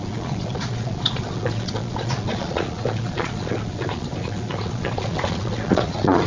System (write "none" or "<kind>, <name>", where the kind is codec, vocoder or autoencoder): vocoder, Vocos